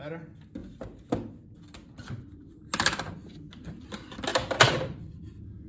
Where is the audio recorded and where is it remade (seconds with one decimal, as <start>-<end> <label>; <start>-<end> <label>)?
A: 0.0-5.7 recorded